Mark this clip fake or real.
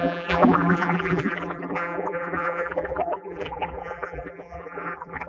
fake